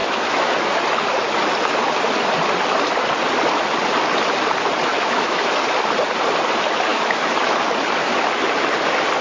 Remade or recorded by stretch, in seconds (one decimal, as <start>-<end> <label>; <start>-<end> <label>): 0.0-0.5 remade; 0.5-4.9 recorded; 4.9-5.6 remade; 5.6-6.9 recorded; 6.9-7.4 remade; 7.4-9.2 recorded